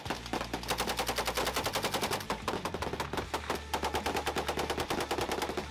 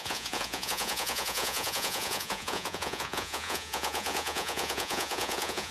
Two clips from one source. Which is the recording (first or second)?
first